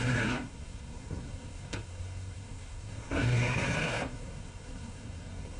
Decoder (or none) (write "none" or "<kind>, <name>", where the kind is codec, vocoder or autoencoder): codec, SNAC